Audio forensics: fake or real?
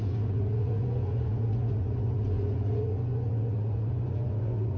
fake